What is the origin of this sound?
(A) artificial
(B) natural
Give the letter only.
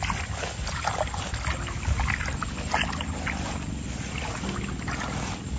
B